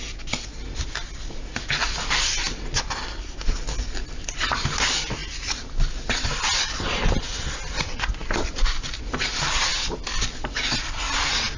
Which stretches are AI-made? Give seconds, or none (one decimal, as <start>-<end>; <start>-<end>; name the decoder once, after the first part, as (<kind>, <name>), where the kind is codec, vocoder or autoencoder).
8.2-9.0 (vocoder, BigVGAN v2)